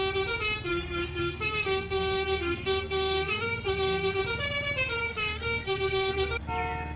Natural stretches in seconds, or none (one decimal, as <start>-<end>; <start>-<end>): 0.0-0.7; 4.2-5.0; 6.4-7.0